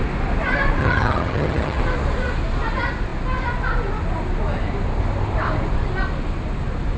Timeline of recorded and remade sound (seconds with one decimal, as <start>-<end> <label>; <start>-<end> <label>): 0.0-0.8 recorded; 0.8-1.8 remade; 1.8-7.0 recorded

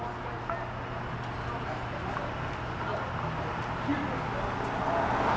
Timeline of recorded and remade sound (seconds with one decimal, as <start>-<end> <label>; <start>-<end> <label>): 0.0-5.4 recorded

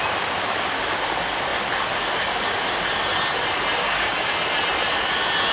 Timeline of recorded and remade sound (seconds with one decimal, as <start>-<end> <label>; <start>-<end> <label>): 0.0-3.8 recorded; 3.8-4.3 remade; 4.3-5.5 recorded

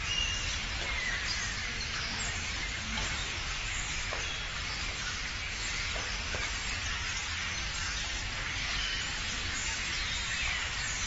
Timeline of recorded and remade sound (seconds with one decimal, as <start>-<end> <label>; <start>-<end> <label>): 0.0-3.2 recorded; 3.2-4.9 remade; 4.9-8.9 recorded; 8.9-11.1 remade